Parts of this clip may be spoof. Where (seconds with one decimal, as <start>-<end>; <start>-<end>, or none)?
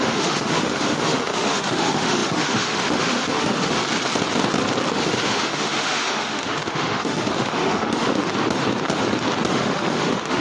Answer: 0.0-3.8; 4.9-8.2; 9.5-10.4